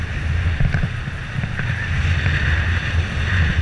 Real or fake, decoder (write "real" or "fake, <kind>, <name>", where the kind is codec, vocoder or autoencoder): real